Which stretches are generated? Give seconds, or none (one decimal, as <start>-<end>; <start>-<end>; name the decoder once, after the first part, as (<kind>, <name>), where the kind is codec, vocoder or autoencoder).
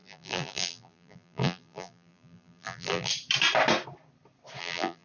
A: 0.0-3.1 (vocoder, BigVGAN v2); 4.6-5.0